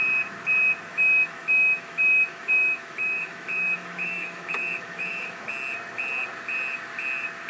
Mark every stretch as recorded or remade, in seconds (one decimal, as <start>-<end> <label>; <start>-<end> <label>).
0.0-0.9 recorded; 0.9-5.4 remade; 5.4-7.5 recorded